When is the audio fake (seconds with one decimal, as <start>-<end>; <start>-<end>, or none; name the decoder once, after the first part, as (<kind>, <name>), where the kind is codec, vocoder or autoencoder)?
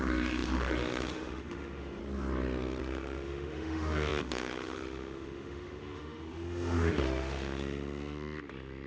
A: 0.0-2.0 (autoencoder, DAC-VAE); 2.8-8.9